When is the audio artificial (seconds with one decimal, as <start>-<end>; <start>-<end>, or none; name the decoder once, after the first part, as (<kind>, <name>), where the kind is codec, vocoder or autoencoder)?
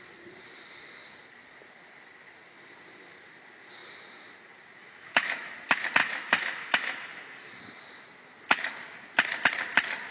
4.8-5.5 (autoencoder, DAC-VAE); 6.0-7.6